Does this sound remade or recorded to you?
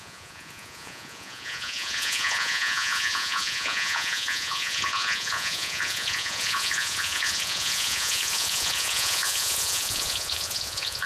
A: remade